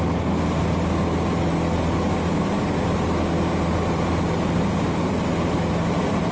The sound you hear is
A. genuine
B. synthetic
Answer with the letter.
A